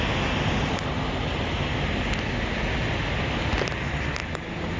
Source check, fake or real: real